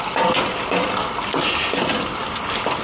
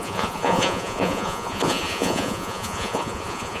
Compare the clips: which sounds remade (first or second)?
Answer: second